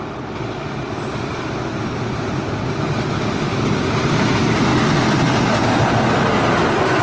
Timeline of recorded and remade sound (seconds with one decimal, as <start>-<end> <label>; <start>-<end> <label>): 0.0-7.0 recorded